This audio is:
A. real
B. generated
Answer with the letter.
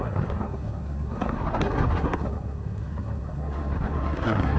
B